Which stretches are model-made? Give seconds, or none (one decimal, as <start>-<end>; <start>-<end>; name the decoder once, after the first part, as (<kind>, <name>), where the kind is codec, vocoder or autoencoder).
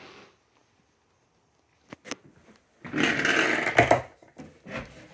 none